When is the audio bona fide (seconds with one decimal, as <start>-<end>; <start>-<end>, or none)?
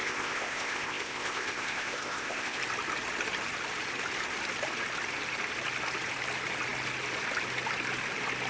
2.6-8.5